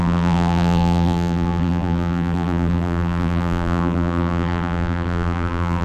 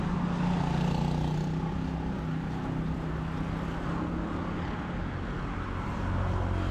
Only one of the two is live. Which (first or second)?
second